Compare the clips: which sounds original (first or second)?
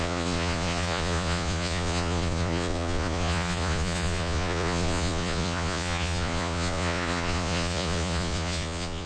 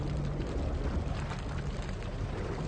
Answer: second